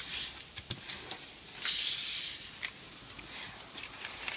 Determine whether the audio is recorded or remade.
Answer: recorded